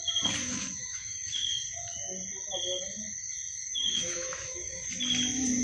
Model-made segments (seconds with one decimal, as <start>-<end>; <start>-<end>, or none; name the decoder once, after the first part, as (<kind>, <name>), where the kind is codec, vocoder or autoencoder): 0.8-1.5 (autoencoder, DAC-VAE); 3.7-4.9

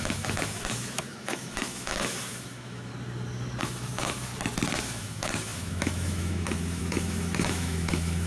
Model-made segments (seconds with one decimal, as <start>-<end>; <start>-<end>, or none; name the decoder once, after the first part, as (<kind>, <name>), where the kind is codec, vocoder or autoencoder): 0.0-2.9 (autoencoder, DAC-VAE); 3.6-4.3; 4.8-8.3

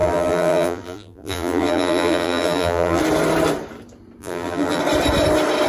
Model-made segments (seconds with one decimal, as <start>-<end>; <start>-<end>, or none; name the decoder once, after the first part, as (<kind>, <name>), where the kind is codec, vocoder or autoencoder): 0.0-3.0 (vocoder, BigVGAN v2); 4.2-4.8

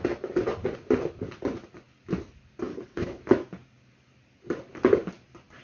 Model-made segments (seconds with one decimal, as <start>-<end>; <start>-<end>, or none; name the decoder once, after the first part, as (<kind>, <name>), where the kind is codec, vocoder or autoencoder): 2.7-3.2 (codec, HILCodec)

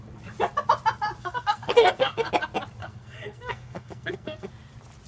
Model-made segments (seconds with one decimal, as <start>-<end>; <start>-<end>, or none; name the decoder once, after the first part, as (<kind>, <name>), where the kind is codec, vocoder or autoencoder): 1.2-2.3 (codec, SNAC); 2.8-4.5